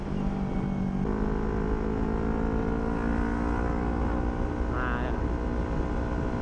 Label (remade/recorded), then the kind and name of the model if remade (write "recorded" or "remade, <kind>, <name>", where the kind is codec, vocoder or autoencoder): recorded